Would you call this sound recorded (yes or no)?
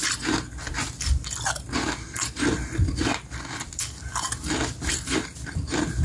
yes